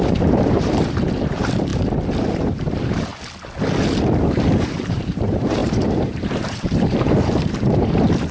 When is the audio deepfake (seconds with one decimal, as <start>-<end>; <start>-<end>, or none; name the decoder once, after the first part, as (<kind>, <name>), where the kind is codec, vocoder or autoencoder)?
0.0-1.7 (vocoder, BigVGAN v2); 2.4-3.1; 4.3-8.3

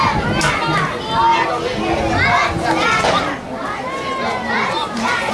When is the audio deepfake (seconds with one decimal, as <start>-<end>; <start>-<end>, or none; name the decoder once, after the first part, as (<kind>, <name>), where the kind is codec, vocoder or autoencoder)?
0.0-1.3 (vocoder, BigVGAN v2); 4.5-5.3

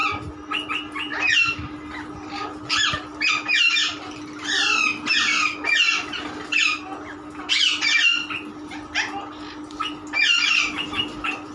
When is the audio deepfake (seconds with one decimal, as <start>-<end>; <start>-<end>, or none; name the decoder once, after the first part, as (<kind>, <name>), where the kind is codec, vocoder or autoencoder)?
1.1-3.3 (vocoder, BigVGAN v2); 3.8-4.6